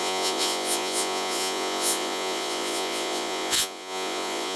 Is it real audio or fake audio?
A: fake